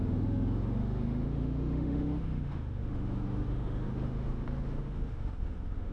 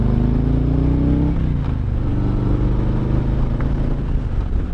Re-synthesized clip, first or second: first